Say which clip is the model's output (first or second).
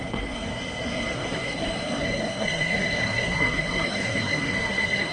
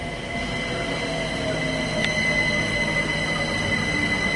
first